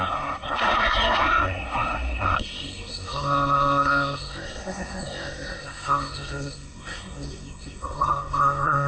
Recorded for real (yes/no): no